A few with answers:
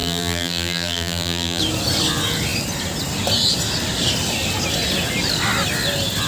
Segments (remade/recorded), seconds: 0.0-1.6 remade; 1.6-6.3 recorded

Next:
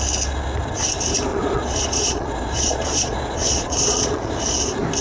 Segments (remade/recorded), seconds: 0.0-1.3 recorded; 1.3-4.3 remade; 4.3-5.0 recorded

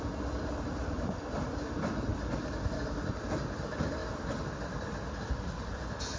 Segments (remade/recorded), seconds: 0.0-6.2 recorded

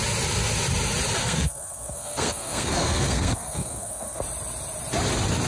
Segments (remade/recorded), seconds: 0.0-1.2 recorded; 1.2-4.2 remade; 4.2-5.5 recorded